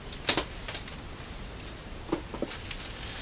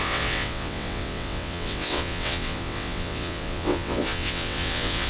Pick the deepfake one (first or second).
second